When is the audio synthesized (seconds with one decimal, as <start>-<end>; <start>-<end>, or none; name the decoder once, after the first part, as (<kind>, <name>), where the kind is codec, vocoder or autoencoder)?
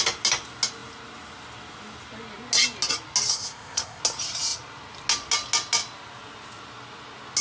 3.3-4.0 (codec, ZipCodec)